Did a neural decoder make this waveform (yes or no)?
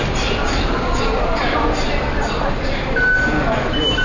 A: no